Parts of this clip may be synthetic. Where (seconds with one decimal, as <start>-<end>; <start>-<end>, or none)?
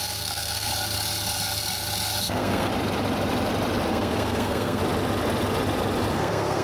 0.0-0.7; 2.2-2.7; 3.9-4.8; 6.1-6.6